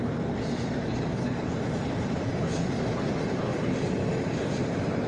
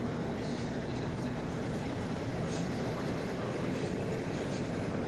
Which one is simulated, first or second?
first